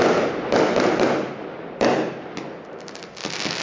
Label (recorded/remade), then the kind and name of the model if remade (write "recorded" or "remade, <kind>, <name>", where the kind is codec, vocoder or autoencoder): recorded